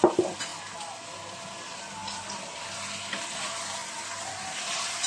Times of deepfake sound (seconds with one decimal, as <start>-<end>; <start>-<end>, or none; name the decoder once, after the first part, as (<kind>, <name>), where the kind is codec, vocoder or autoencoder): 3.8-4.4 (vocoder, BigVGAN v2)